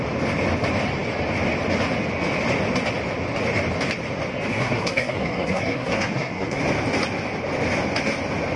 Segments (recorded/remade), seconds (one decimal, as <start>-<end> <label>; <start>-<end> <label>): 0.0-4.5 recorded; 4.5-6.6 remade; 6.6-8.6 recorded